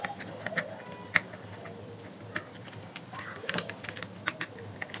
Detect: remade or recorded recorded